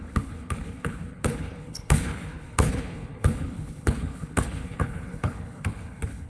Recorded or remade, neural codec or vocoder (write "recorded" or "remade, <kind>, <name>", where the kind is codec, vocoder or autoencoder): remade, codec, HILCodec